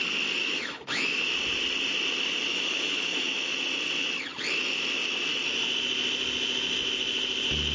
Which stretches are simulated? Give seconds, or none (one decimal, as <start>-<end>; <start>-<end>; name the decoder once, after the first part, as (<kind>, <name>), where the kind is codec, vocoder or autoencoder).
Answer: 0.4-1.3 (autoencoder, DAC-VAE); 2.5-3.4